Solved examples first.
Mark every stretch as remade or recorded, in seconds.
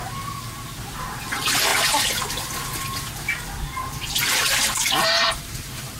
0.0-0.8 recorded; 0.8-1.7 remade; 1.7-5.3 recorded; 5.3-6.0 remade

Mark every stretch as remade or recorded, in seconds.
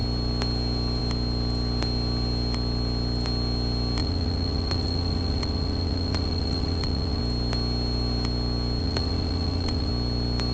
0.0-4.0 recorded; 4.0-7.2 remade; 7.2-8.8 recorded; 8.8-9.9 remade; 9.9-10.5 recorded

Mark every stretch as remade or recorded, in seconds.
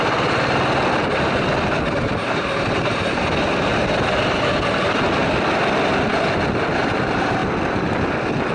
0.0-8.5 recorded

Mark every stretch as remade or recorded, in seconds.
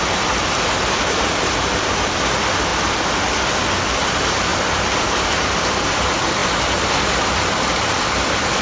0.0-2.7 remade; 2.7-4.1 recorded; 4.1-8.6 remade